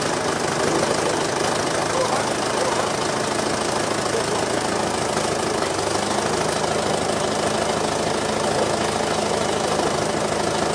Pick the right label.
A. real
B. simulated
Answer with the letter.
A